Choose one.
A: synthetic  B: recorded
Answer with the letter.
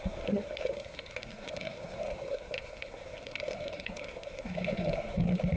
A